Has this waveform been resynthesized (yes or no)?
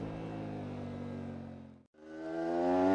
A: no